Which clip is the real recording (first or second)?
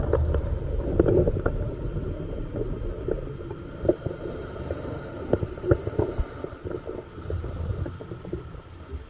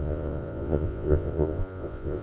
first